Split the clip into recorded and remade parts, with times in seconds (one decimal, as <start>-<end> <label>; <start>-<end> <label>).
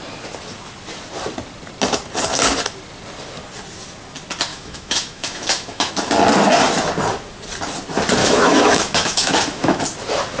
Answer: 0.0-4.5 recorded; 4.5-5.9 remade; 5.9-8.2 recorded; 8.2-9.8 remade; 9.8-10.4 recorded